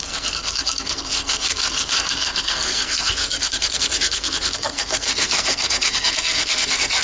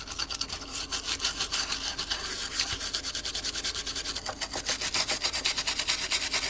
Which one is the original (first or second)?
second